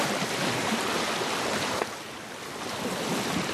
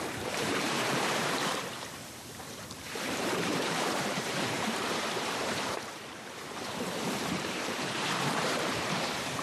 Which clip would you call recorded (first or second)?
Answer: first